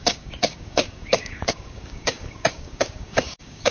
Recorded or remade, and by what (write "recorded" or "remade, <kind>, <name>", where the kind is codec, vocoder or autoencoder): remade, codec, DAC